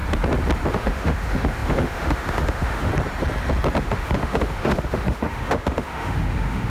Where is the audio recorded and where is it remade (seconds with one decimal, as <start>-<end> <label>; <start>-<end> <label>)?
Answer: 0.0-0.7 recorded; 0.7-2.9 remade; 2.9-3.8 recorded; 3.8-6.7 remade